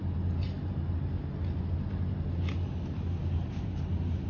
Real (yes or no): yes